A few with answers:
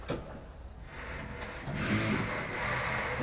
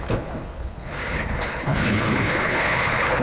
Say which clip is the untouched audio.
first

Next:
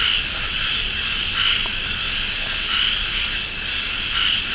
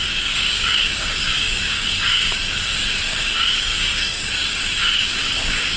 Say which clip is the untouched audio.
first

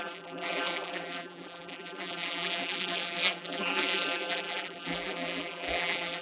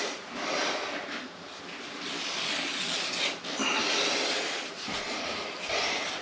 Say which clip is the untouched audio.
second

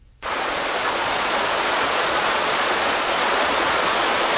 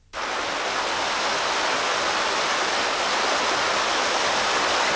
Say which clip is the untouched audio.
second